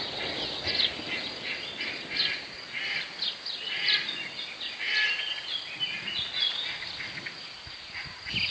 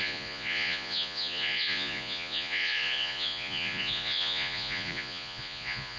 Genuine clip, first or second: first